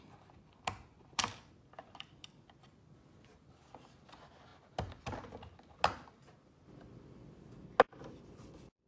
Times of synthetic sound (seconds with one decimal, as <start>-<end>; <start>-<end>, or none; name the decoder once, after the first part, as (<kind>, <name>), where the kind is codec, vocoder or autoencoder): none